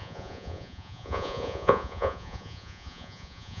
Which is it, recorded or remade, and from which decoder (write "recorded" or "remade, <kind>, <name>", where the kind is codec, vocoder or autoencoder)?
remade, vocoder, Vocos